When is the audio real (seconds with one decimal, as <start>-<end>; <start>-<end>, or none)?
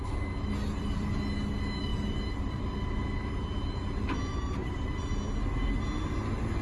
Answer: 0.0-1.9; 2.6-4.3; 5.2-6.6